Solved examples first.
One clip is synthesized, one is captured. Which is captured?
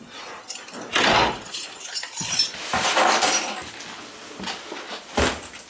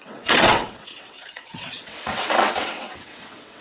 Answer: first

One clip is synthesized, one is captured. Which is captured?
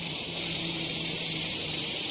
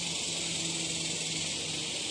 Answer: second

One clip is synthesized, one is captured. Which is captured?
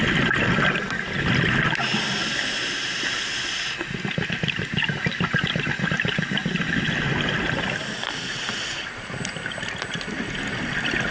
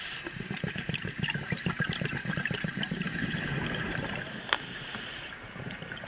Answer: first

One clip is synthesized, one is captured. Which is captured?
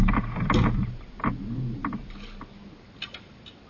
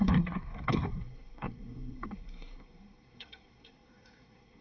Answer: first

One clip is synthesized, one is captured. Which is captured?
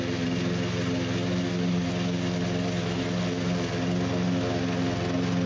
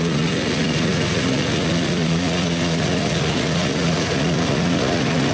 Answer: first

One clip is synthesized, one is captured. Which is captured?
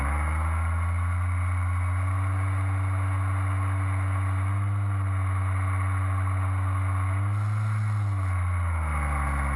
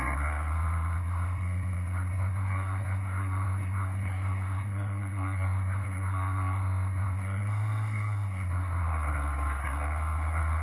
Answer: first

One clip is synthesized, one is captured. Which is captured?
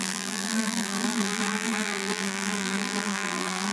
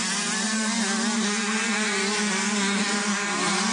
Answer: second